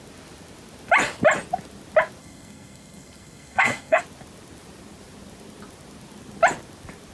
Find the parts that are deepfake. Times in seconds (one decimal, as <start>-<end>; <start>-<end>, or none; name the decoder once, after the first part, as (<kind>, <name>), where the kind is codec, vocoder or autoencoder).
2.2-4.0 (codec, SNAC)